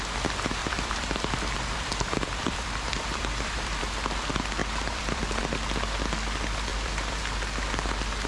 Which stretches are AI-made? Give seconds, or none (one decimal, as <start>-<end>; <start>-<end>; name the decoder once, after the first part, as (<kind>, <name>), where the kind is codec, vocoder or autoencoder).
0.6-3.8 (vocoder, BigVGAN v2); 4.6-5.4; 6.7-7.2